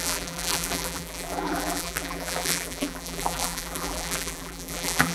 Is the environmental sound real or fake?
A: fake